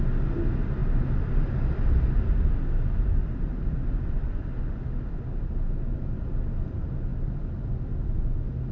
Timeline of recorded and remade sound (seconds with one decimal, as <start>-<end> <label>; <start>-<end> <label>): 0.0-3.2 recorded; 3.2-4.6 remade; 4.6-8.7 recorded